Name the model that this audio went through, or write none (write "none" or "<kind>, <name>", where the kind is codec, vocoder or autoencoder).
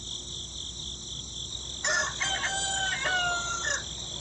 none